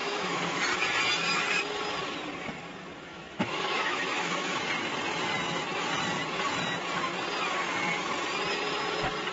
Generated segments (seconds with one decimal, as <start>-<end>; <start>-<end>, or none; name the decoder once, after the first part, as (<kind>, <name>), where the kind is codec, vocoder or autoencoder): 0.0-0.6 (autoencoder, DAC-VAE); 3.1-4.7